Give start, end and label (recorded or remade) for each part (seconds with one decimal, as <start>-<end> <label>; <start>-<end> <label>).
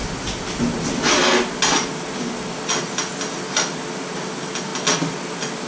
0.0-5.7 recorded